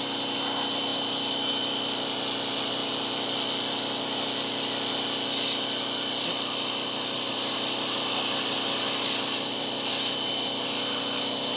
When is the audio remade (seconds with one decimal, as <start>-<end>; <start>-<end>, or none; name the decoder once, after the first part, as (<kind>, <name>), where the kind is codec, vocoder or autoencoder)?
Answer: none